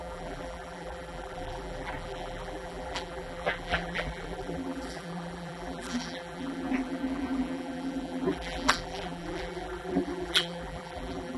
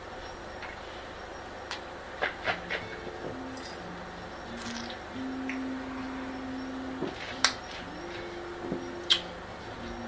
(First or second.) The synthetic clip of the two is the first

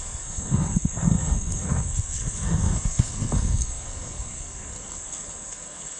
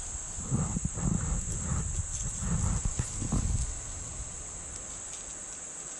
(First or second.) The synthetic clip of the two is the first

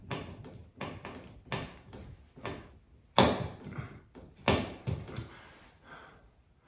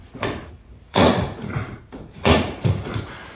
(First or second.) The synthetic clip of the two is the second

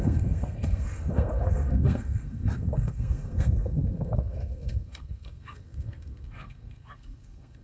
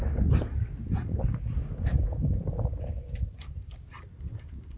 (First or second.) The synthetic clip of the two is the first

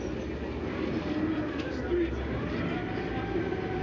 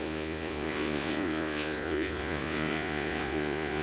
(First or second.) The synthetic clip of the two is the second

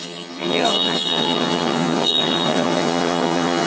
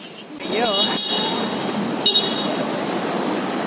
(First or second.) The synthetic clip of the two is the first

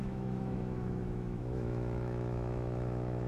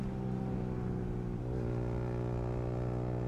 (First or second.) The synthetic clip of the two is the first